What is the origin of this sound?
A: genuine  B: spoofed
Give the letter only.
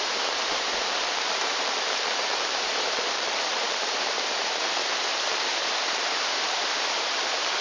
B